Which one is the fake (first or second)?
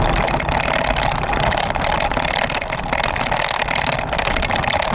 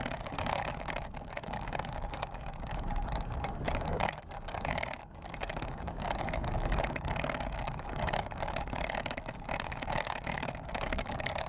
second